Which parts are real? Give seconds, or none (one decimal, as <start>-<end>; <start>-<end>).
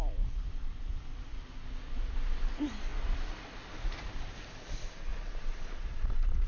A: 0.0-6.5